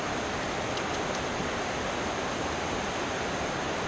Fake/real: real